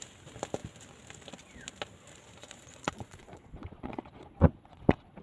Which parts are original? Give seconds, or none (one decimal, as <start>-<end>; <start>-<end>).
0.0-2.4